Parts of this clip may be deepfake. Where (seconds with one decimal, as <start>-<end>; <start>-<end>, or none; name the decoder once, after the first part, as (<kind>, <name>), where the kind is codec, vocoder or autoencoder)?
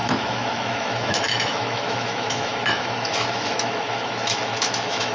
0.0-5.1 (autoencoder, DAC-VAE)